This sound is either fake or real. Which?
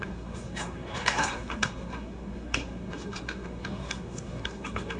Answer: fake